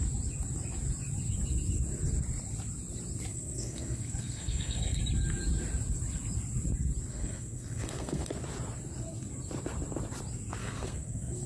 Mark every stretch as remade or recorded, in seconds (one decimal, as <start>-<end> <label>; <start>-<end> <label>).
0.0-3.3 recorded; 3.3-5.0 remade; 5.0-7.1 recorded; 7.1-8.3 remade; 8.3-10.6 recorded; 10.6-11.5 remade

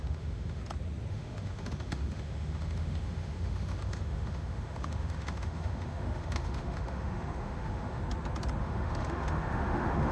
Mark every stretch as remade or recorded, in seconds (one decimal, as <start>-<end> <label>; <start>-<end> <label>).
0.0-0.6 remade; 0.6-1.1 recorded; 1.1-8.0 remade; 8.0-8.6 recorded; 8.6-10.1 remade

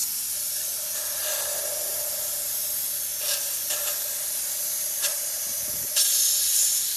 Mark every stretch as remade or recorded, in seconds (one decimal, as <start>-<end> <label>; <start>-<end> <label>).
0.0-7.0 recorded

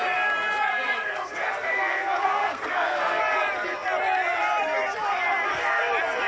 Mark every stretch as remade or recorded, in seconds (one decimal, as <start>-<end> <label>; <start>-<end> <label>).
0.0-0.7 recorded; 0.7-3.2 remade; 3.2-6.3 recorded

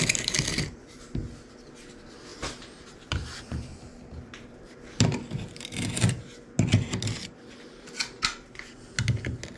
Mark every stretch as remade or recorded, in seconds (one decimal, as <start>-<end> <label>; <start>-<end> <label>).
0.0-2.3 recorded; 2.3-5.7 remade; 5.7-9.6 recorded

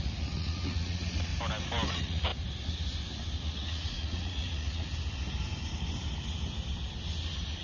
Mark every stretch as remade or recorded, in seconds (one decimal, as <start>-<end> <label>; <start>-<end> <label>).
0.0-1.3 remade; 1.3-1.9 recorded; 1.9-2.3 remade; 2.3-3.4 recorded; 3.4-4.9 remade; 4.9-7.6 recorded

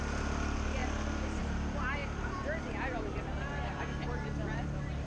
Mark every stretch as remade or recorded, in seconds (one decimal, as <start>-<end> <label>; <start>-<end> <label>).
0.0-5.1 recorded

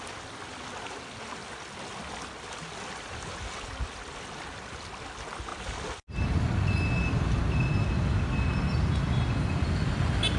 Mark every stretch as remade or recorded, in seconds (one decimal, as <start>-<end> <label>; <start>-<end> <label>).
0.0-10.4 recorded